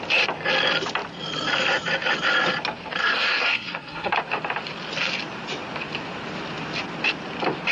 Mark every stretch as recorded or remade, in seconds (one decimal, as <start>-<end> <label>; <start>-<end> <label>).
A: 0.0-3.0 recorded; 3.0-4.1 remade; 4.1-7.7 recorded